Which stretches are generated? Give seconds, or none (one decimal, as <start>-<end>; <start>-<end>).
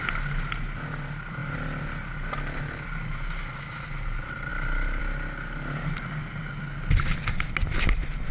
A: none